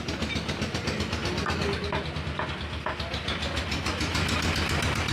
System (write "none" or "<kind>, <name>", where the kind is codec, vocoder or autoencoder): none